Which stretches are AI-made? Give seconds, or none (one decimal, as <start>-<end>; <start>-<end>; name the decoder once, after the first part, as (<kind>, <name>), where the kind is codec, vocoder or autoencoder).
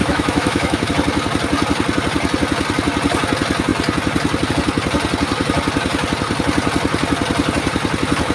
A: 0.0-0.9 (autoencoder, DAC-VAE)